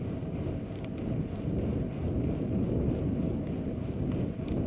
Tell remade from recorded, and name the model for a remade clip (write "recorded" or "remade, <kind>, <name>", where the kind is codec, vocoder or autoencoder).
recorded